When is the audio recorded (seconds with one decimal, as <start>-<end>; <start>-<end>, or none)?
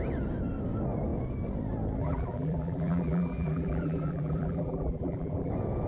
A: 0.0-2.0; 5.5-5.9